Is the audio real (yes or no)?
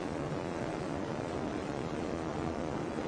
no